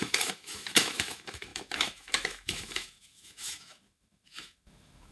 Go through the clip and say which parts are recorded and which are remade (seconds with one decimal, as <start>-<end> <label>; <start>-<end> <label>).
0.0-5.1 remade